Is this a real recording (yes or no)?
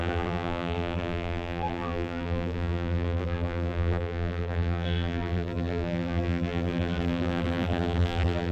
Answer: no